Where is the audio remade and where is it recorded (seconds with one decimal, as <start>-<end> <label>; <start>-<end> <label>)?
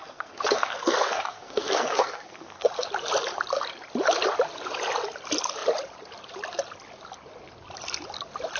0.0-2.7 remade; 2.7-8.6 recorded